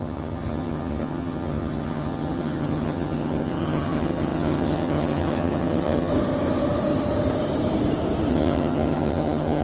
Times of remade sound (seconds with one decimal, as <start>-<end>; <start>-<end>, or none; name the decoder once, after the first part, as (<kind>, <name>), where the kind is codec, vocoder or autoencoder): 0.0-6.1 (vocoder, HiFi-GAN); 8.3-9.6

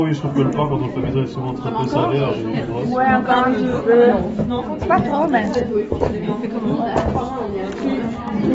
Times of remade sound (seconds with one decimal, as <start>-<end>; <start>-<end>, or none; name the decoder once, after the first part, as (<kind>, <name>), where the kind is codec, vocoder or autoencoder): 2.0-2.6 (autoencoder, DAC-VAE); 3.7-6.9

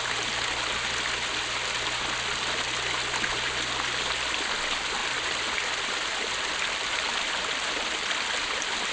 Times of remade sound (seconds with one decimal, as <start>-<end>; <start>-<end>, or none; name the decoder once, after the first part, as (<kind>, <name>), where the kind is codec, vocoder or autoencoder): 5.0-7.7 (vocoder, BigVGAN v2)

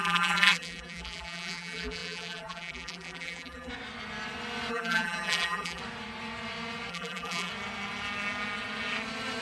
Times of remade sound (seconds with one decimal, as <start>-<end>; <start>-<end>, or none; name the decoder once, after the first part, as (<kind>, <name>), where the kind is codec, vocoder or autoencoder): 0.0-3.7 (vocoder, BigVGAN v2); 4.7-5.8; 6.9-7.5